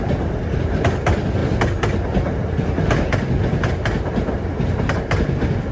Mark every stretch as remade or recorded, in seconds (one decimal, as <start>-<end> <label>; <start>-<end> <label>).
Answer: 0.0-5.7 recorded